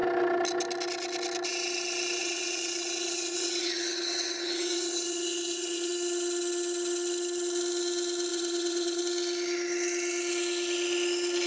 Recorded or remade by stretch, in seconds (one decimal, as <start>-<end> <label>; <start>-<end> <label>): 0.0-2.2 recorded; 2.2-5.9 remade; 5.9-8.3 recorded; 8.3-9.0 remade; 9.0-11.5 recorded